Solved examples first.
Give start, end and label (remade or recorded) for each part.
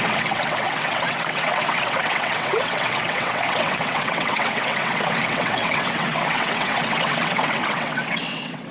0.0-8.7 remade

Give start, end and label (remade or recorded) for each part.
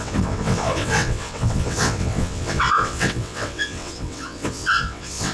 0.0-5.3 remade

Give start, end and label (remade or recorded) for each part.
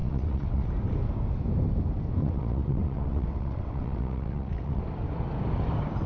0.0-0.7 remade; 0.7-2.2 recorded; 2.2-4.8 remade; 4.8-6.1 recorded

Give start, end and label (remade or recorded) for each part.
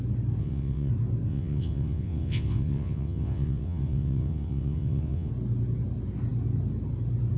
0.0-0.4 recorded; 0.4-0.9 remade; 0.9-1.3 recorded; 1.3-5.3 remade; 5.3-7.4 recorded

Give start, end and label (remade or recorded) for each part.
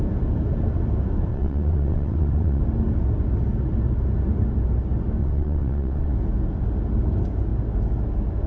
0.0-1.3 recorded; 1.3-2.6 remade; 2.6-5.2 recorded; 5.2-6.1 remade; 6.1-8.5 recorded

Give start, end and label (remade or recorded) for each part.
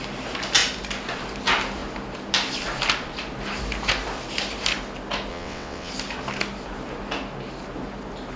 0.0-5.3 recorded; 5.3-5.9 remade; 5.9-8.4 recorded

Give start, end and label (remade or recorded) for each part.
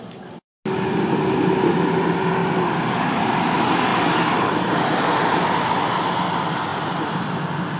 0.0-7.8 recorded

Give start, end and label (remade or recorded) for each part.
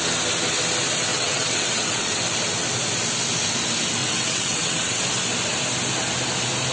0.0-1.1 recorded; 1.1-2.2 remade; 2.2-4.0 recorded; 4.0-5.0 remade; 5.0-6.7 recorded